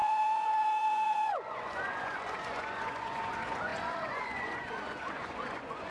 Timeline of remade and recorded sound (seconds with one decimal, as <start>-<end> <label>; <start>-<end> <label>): 0.0-5.9 remade